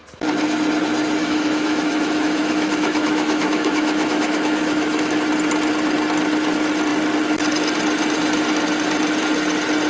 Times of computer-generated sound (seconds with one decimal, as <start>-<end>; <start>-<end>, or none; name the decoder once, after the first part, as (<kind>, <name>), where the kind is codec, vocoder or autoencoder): 1.2-5.2 (autoencoder, DAC-VAE)